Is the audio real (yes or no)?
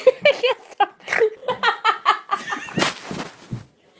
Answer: yes